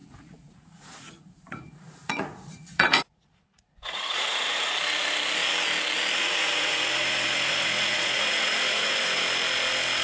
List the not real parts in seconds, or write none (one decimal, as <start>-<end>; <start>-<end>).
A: 0.0-4.7; 6.2-9.2